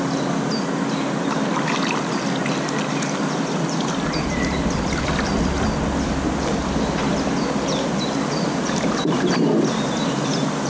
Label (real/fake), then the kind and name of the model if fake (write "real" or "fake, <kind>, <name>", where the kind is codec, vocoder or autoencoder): real